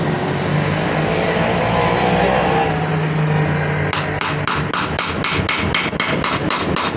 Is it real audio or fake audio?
real